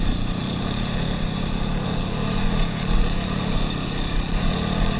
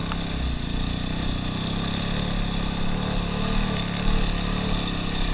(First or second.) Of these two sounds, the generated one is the first